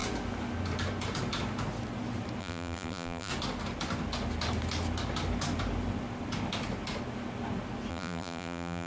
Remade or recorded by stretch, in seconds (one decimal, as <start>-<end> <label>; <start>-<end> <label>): 0.0-2.4 recorded; 2.4-3.3 remade; 3.3-7.9 recorded; 7.9-8.9 remade